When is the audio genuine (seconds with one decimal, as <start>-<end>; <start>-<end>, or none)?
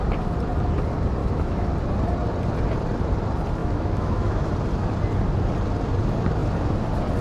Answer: 0.0-1.2; 1.7-3.6; 4.5-7.2